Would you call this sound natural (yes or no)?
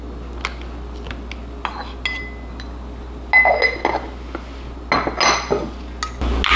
yes